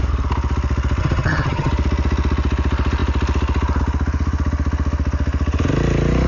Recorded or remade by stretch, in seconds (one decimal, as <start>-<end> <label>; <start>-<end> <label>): 0.0-1.0 recorded; 1.0-1.7 remade; 1.7-6.3 recorded